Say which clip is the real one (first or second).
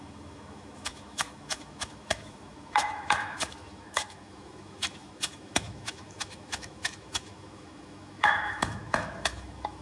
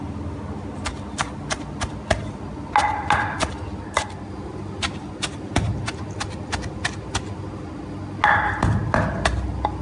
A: second